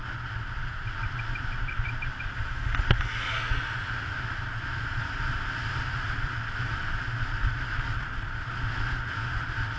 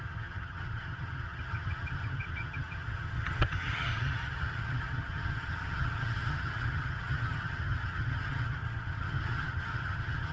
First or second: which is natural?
first